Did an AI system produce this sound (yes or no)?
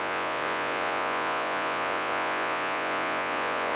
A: yes